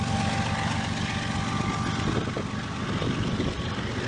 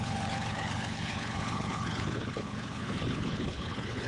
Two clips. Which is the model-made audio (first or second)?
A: second